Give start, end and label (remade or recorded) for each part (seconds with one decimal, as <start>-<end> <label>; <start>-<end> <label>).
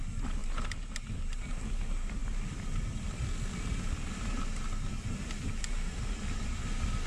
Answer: 0.0-0.4 recorded; 0.4-0.9 remade; 0.9-7.1 recorded